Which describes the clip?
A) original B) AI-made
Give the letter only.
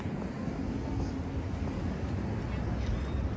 A